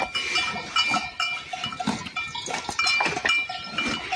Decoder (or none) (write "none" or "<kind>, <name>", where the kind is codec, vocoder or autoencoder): none